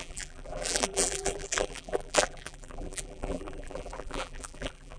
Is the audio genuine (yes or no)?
no